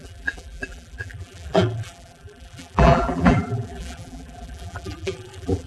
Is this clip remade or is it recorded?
remade